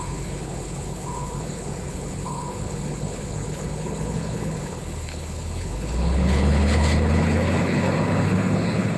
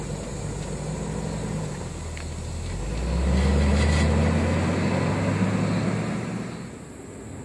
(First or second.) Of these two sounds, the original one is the second